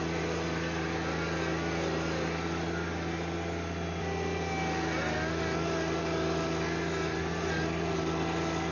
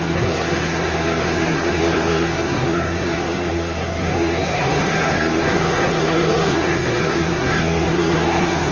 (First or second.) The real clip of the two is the first